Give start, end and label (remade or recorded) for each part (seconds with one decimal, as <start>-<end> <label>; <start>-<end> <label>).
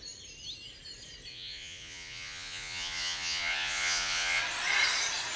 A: 0.0-1.3 recorded; 1.3-4.4 remade; 4.4-5.4 recorded